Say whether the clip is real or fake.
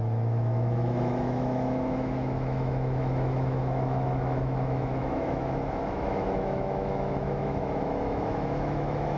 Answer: fake